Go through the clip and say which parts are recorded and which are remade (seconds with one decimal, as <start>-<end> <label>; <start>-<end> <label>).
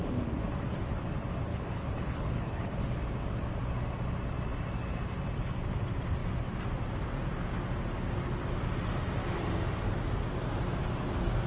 0.0-1.5 recorded; 1.5-2.8 remade; 2.8-11.5 recorded